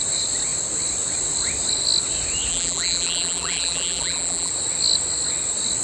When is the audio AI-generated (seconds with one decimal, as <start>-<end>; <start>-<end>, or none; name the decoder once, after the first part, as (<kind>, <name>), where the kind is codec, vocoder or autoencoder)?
2.5-4.5 (vocoder, BigVGAN v2)